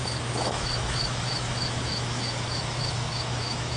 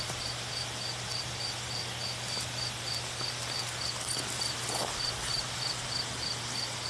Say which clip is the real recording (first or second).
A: second